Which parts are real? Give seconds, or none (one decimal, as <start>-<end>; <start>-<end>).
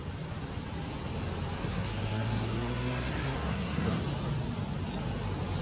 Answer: 0.0-1.6; 4.0-5.6